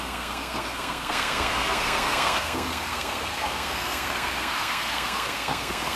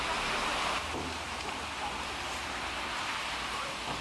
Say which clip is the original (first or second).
second